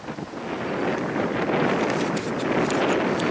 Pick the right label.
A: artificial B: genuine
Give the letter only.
B